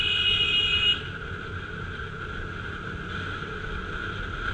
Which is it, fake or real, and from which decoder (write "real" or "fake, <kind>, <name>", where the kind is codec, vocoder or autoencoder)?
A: real